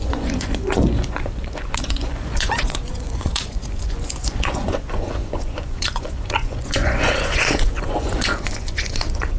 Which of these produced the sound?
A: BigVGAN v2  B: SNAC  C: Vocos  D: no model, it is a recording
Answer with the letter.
C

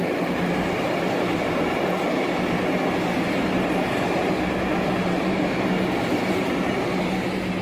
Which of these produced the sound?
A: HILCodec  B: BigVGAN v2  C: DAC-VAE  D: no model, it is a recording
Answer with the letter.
D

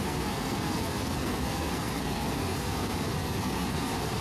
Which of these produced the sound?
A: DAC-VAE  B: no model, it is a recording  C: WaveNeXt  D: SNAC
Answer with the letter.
D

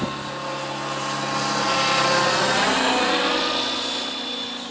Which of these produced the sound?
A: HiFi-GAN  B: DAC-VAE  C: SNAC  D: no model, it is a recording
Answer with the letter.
D